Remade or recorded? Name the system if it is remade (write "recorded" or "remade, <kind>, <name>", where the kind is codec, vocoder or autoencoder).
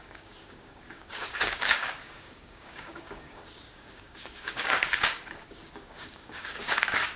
remade, codec, DAC